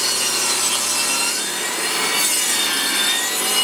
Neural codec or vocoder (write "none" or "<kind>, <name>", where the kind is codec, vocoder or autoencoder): none